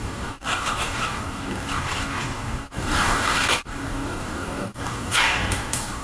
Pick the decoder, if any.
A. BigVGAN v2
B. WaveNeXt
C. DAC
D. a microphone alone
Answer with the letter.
C